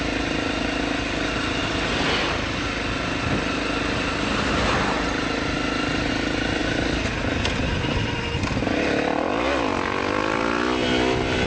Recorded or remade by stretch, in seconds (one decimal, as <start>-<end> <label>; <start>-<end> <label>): 0.0-11.5 recorded